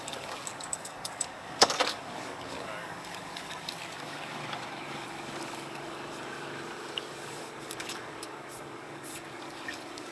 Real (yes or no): no